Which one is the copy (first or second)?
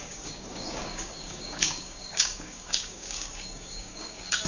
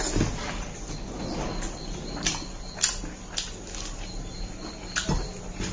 first